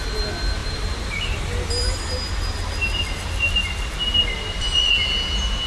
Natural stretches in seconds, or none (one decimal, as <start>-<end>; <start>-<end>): 0.0-0.6; 1.7-5.7